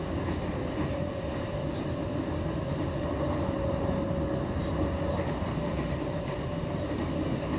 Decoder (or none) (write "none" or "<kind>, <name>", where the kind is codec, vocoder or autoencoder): none